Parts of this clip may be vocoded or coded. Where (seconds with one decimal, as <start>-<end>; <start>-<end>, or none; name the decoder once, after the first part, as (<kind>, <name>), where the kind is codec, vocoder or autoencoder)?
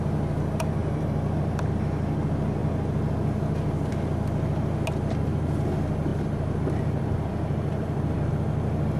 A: 0.8-1.9 (vocoder, BigVGAN v2); 6.1-8.3